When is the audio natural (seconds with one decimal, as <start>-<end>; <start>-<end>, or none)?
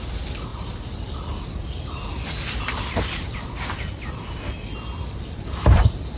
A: 0.0-6.2